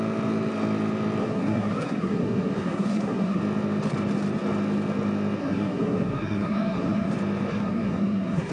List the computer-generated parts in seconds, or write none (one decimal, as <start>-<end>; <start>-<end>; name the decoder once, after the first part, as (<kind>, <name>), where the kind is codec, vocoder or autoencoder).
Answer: 1.2-3.4 (codec, SNAC); 5.4-7.1; 7.5-8.5